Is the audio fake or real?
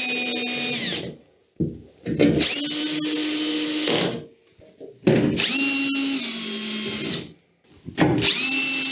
real